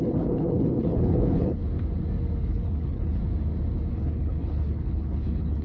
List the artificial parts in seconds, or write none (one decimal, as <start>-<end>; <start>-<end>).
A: 0.0-1.6; 2.4-3.2; 3.9-5.6